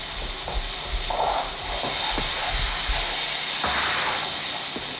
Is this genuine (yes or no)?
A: yes